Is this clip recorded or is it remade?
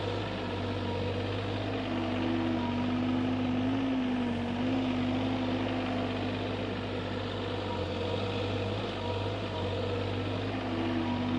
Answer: recorded